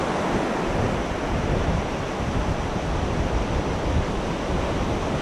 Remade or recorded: recorded